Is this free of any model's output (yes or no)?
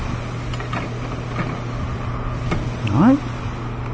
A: yes